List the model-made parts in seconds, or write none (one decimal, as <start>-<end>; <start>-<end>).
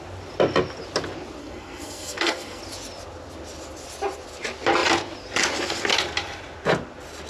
1.4-2.6